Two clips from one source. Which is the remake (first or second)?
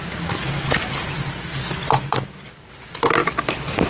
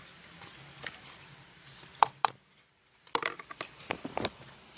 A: second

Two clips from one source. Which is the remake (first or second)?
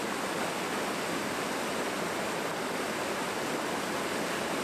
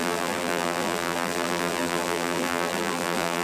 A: second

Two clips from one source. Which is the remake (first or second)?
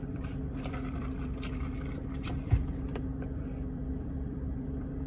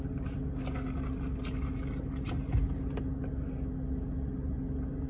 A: first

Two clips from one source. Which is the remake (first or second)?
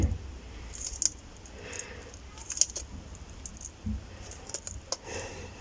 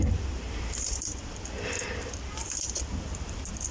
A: second